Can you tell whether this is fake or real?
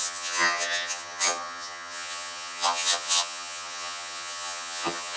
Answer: fake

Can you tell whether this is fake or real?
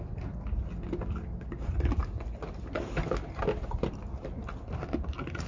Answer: real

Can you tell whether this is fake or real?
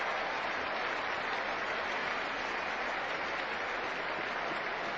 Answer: real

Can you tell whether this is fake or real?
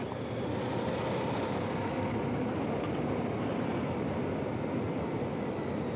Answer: real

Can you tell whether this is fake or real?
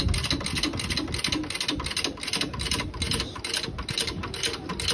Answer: real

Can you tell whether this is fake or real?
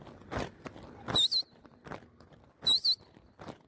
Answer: real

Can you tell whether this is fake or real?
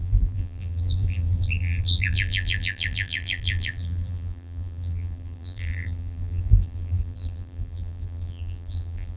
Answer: fake